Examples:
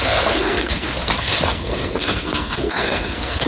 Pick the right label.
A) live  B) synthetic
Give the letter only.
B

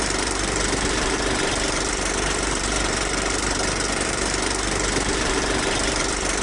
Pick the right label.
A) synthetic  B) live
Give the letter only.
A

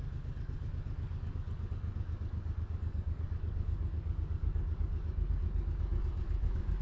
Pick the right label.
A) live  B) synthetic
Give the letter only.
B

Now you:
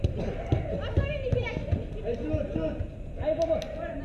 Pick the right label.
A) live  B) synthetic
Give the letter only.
A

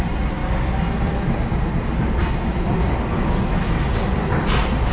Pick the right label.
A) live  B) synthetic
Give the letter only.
A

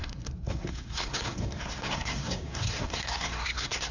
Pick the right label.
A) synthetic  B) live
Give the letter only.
A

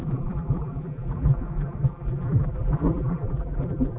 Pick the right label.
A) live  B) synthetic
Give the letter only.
B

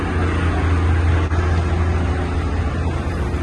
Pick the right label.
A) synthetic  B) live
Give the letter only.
B